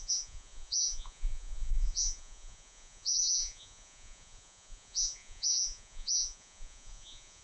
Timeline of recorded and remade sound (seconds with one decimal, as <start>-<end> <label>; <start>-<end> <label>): 0.0-7.4 remade